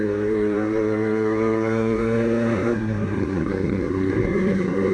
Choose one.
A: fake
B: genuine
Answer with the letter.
A